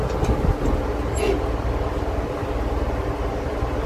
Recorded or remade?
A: recorded